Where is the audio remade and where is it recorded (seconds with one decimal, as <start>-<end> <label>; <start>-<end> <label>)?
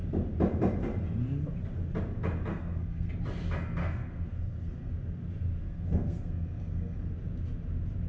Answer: 0.0-2.5 recorded; 2.5-3.1 remade; 3.1-3.8 recorded; 3.8-4.9 remade; 4.9-5.6 recorded; 5.6-7.1 remade; 7.1-8.1 recorded